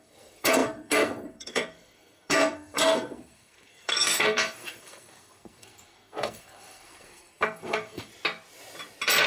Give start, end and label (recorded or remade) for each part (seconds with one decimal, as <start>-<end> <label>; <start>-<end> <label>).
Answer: 0.0-8.1 remade; 8.1-9.3 recorded